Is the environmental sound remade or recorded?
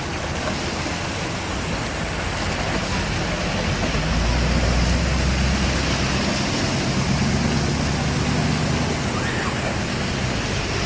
recorded